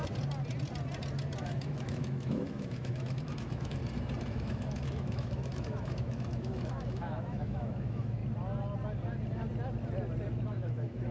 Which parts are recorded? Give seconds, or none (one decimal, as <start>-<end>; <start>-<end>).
0.0-1.4; 3.8-4.3; 8.2-10.5